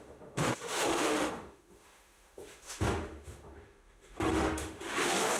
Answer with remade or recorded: remade